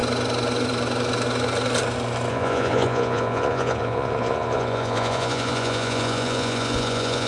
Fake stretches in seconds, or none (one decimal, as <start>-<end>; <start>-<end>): 2.3-7.3

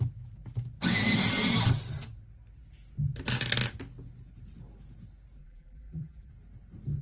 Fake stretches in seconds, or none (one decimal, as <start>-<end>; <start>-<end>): 5.4-6.3

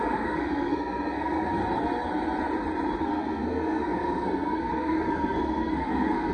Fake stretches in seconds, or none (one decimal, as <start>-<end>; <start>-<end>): 0.0-1.6; 3.0-6.3

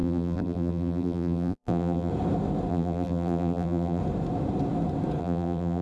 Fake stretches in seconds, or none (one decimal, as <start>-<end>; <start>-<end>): 0.0-2.1; 2.7-4.0; 5.2-5.8

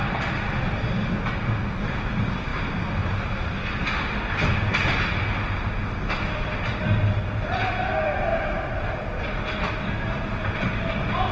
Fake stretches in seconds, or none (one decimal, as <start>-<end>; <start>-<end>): 2.5-3.5

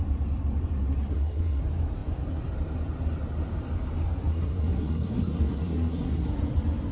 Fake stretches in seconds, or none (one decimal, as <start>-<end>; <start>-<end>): 1.1-1.6; 4.3-6.3

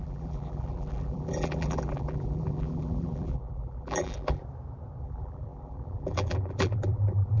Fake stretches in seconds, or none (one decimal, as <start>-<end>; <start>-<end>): 0.0-4.4; 5.0-7.4

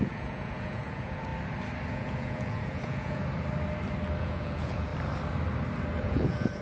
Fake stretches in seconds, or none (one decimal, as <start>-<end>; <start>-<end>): 0.0-1.3; 1.9-3.2; 4.2-4.9; 6.0-6.6